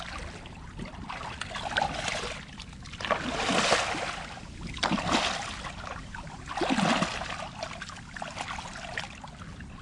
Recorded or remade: recorded